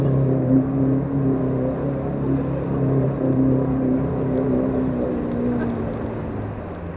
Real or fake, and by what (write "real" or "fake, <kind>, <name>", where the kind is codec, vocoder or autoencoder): real